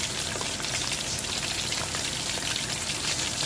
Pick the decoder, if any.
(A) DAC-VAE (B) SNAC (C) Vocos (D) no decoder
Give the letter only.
D